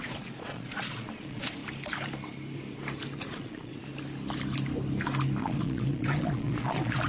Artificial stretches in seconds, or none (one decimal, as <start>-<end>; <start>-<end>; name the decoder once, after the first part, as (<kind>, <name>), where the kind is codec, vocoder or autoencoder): 0.0-1.6 (vocoder, Vocos); 3.3-3.7; 5.4-7.1